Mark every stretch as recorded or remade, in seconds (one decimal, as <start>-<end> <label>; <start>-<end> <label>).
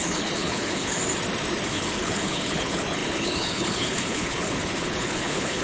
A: 0.0-1.0 remade; 1.0-1.7 recorded; 1.7-5.6 remade